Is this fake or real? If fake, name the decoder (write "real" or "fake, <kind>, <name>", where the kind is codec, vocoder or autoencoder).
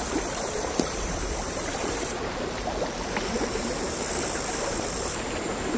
fake, vocoder, BigVGAN v2